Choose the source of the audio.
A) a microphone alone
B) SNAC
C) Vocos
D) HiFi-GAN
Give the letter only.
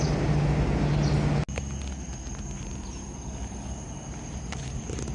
A